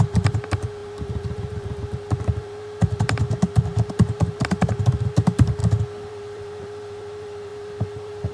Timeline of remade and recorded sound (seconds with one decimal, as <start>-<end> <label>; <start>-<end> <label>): 0.0-5.6 remade; 5.6-6.1 recorded; 6.1-8.3 remade